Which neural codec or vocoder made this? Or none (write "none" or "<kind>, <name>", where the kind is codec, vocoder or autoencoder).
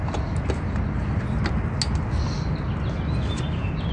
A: none